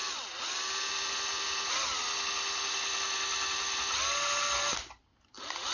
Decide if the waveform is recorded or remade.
recorded